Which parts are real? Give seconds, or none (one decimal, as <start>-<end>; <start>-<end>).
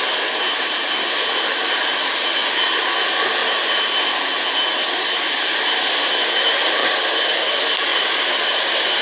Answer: 0.0-7.9